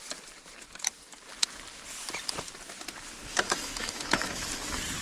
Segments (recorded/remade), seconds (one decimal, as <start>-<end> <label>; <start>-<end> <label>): 0.0-3.2 recorded; 3.2-4.4 remade; 4.4-5.0 recorded